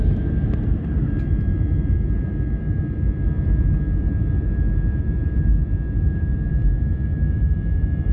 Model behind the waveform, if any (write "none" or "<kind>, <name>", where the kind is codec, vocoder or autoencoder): vocoder, BigVGAN v2